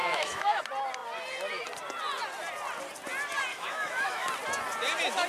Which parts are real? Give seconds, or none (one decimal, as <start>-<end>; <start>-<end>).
0.6-3.5; 4.3-5.3